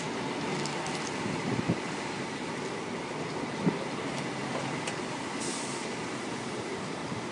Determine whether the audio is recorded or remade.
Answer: recorded